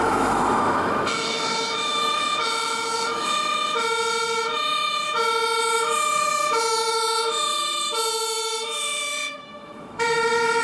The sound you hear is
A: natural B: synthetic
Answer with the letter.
B